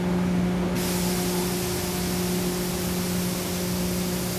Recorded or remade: recorded